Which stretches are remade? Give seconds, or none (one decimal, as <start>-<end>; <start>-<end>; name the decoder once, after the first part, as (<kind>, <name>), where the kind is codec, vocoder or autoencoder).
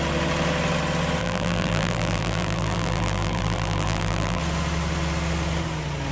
1.2-4.4 (vocoder, BigVGAN v2)